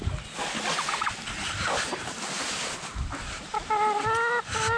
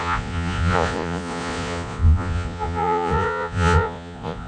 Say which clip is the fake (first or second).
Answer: second